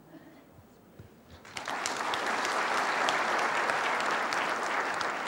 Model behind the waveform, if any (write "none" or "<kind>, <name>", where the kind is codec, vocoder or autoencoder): none